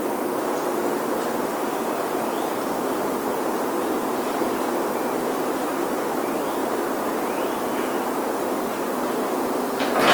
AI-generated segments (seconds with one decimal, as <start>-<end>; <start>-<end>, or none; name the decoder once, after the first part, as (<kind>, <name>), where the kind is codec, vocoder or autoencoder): none